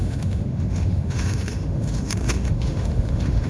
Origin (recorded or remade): remade